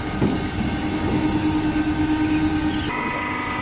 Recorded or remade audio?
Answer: recorded